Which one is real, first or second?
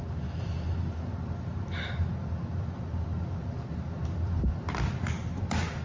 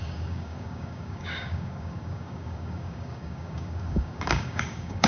first